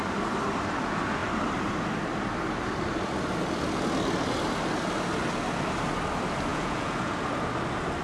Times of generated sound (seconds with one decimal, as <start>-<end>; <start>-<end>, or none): 6.5-7.2